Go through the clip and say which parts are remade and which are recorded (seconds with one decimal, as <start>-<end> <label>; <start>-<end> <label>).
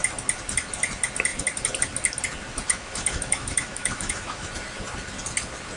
0.0-2.7 recorded; 2.7-4.5 remade; 4.5-5.8 recorded